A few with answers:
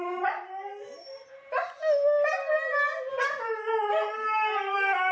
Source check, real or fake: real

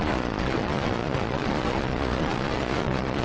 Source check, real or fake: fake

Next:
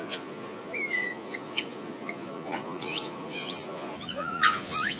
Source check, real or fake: fake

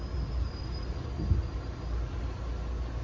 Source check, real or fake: real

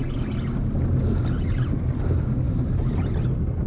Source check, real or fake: real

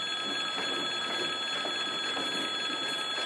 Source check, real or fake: real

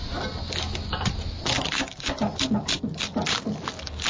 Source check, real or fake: real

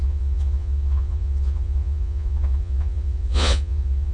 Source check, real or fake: fake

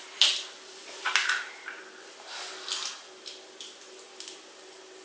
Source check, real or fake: real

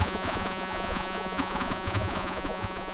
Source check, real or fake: fake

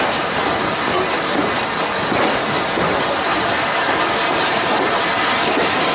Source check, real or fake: real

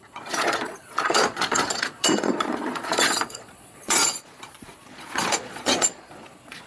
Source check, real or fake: fake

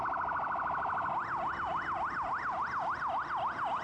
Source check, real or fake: real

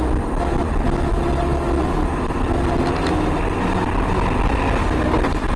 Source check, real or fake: real